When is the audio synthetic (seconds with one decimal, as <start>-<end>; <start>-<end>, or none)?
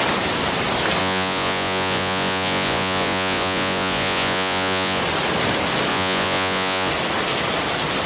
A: 1.0-5.0; 5.9-6.9